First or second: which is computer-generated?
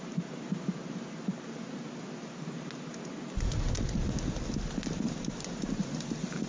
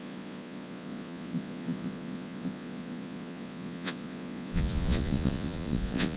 second